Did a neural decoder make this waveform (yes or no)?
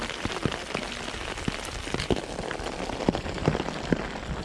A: no